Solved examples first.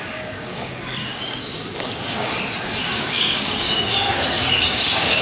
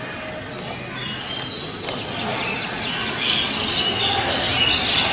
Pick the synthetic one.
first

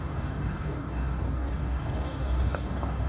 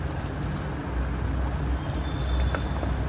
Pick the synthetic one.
first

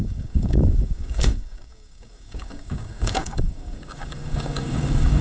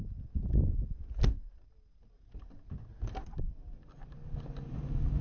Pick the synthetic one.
first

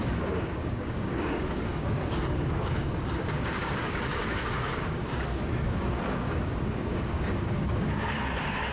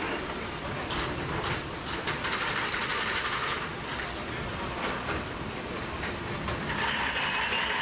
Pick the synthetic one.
first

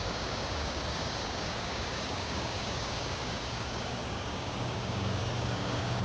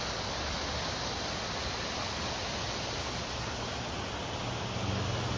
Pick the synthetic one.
first